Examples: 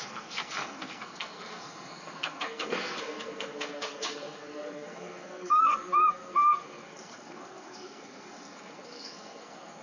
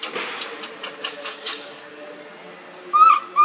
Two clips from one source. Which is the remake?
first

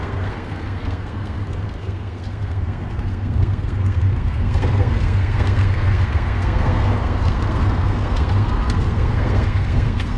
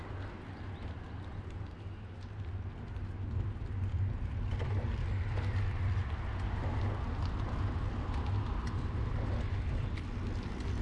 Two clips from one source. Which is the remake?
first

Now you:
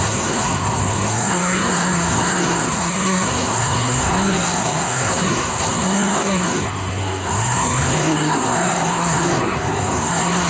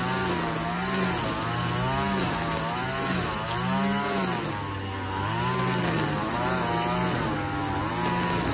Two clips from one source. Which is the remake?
first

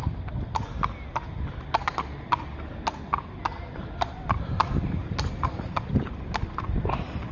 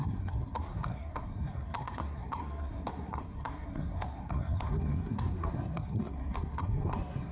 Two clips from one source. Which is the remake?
second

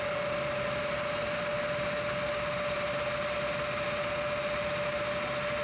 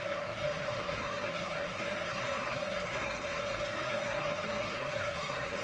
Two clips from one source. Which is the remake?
second